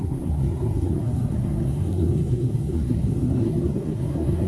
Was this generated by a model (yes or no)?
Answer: yes